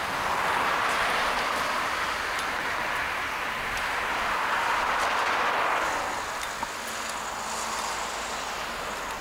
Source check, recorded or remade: recorded